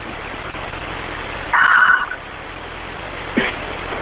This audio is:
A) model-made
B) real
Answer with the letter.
B